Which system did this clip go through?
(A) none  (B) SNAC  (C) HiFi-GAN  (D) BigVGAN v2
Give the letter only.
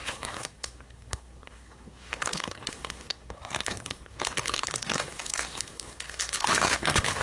B